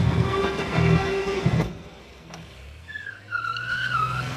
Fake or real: fake